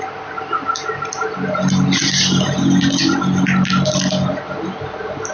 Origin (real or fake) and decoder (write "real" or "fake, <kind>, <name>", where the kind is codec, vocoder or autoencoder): real